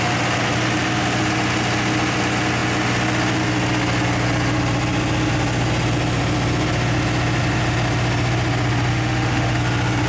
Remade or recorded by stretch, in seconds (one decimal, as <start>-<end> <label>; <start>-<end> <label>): 0.0-8.9 recorded; 8.9-9.6 remade; 9.6-10.1 recorded

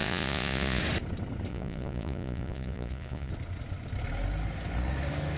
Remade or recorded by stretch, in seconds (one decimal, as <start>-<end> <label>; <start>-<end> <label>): 0.0-0.8 remade; 0.8-1.5 recorded; 1.5-3.3 remade; 3.3-5.4 recorded

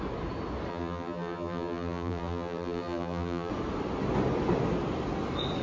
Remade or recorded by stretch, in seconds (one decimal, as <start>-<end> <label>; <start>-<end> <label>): 0.0-0.7 recorded; 0.7-3.5 remade; 3.5-5.6 recorded

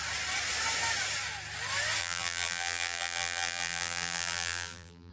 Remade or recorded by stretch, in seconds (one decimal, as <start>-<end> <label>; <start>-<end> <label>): 0.0-2.0 recorded; 2.0-5.1 remade

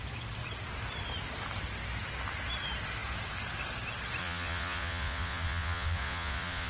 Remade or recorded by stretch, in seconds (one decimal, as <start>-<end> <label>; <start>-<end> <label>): 0.0-4.2 recorded; 4.2-6.7 remade

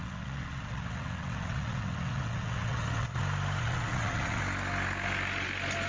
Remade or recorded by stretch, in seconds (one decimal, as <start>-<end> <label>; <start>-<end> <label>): 0.0-3.2 remade; 3.2-3.6 recorded; 3.6-4.4 remade; 4.4-5.9 recorded

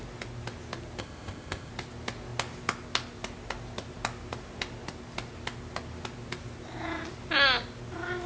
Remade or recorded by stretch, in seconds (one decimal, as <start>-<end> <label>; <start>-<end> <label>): 0.0-1.0 recorded; 1.0-1.7 remade; 1.7-8.3 recorded

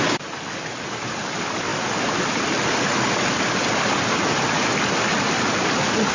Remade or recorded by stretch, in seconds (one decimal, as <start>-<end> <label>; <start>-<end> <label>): 0.0-6.1 recorded